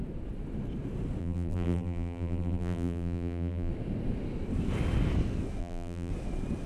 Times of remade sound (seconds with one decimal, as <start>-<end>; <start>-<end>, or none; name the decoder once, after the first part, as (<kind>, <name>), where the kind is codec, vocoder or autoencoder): 1.2-3.7 (vocoder, BigVGAN v2); 5.6-6.1